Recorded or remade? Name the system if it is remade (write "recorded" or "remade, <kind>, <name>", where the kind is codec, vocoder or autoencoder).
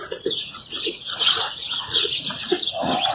remade, vocoder, Vocos